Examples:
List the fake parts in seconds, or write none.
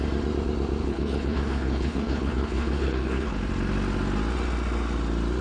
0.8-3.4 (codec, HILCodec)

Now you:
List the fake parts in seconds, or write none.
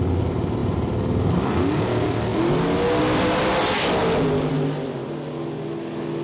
none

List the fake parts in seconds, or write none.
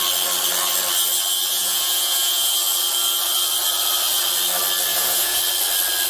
1.5-2.5 (vocoder, Vocos); 4.9-5.4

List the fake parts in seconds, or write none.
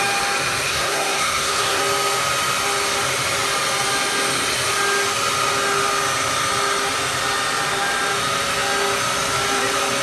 0.7-1.8 (codec, SNAC)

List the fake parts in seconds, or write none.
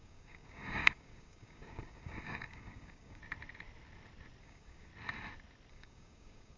0.0-3.2 (codec, DAC); 4.4-4.9; 5.7-6.6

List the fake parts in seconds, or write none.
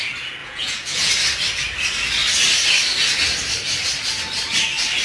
0.4-1.1 (vocoder, Vocos)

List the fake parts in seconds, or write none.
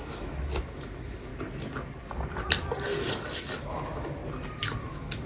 0.0-1.3 (autoencoder, DAC-VAE); 3.1-4.2; 4.8-5.3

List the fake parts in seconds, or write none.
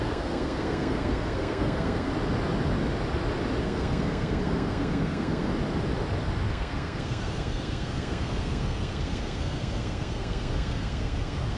0.0-2.1 (codec, SNAC); 3.6-5.5; 6.5-11.6